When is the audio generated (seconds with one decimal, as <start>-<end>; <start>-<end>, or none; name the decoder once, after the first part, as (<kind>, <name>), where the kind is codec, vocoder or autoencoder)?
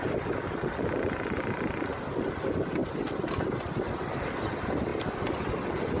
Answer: none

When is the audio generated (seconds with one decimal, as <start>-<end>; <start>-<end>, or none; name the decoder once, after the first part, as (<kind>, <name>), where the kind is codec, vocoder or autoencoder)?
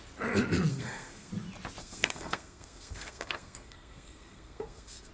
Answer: 0.7-1.3 (codec, SNAC); 1.8-5.1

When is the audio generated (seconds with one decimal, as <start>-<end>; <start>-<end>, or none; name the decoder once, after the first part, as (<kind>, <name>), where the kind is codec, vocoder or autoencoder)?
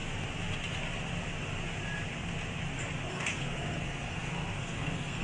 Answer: 3.1-5.2 (codec, SNAC)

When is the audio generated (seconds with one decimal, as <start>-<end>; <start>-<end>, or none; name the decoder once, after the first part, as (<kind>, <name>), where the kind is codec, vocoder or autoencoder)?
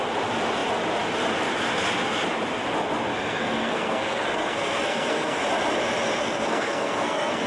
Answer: 3.1-5.4 (codec, SNAC); 6.2-7.5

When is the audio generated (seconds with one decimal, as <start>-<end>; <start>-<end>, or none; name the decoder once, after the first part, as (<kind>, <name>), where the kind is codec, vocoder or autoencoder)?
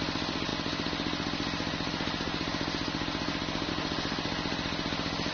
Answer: none